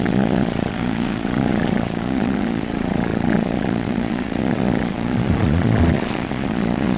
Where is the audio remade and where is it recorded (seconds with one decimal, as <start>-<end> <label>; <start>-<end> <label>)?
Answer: 0.0-7.0 remade